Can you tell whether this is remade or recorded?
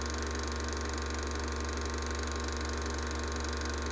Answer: recorded